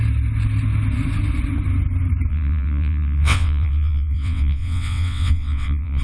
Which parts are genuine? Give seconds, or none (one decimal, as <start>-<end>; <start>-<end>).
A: 0.0-2.3